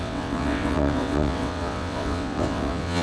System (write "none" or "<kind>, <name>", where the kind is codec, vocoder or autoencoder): vocoder, WaveNeXt